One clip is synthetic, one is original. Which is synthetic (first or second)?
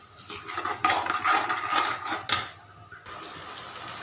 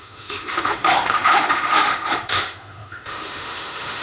second